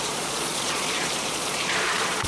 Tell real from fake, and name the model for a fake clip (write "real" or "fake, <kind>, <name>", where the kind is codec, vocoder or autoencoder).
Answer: fake, vocoder, Vocos